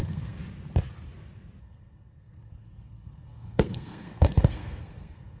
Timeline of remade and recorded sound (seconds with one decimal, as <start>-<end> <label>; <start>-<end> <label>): 0.0-0.4 remade; 0.4-1.6 recorded; 1.6-5.4 remade